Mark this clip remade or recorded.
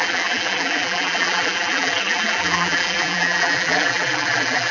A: remade